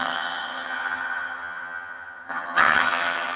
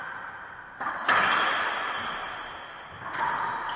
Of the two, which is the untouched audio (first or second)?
second